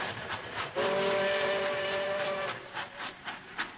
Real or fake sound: fake